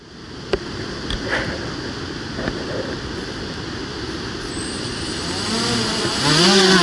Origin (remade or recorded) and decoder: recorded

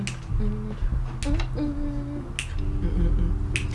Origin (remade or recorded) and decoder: recorded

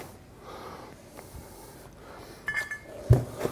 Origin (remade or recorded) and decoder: recorded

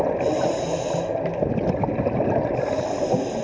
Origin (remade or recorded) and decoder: recorded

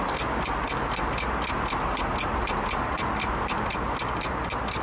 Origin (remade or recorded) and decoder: recorded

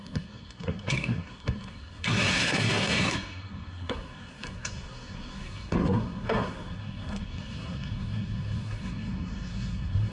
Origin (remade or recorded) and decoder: remade, codec, SNAC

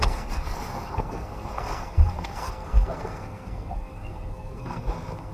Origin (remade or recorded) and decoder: remade, codec, SNAC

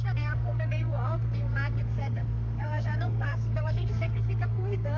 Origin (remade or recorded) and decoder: remade, codec, SNAC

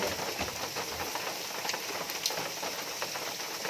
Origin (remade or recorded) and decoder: recorded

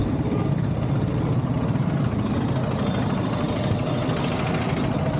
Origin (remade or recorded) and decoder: recorded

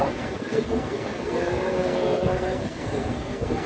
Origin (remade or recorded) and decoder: remade, codec, SNAC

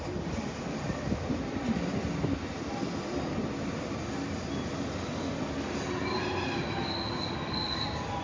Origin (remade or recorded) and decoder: recorded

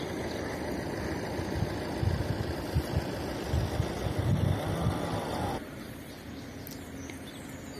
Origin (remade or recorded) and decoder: recorded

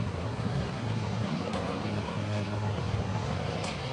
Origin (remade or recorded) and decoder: remade, codec, SNAC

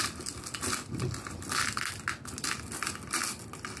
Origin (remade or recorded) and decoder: recorded